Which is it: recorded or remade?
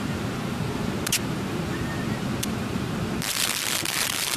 remade